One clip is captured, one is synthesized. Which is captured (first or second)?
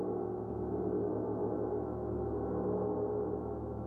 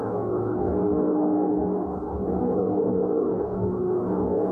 first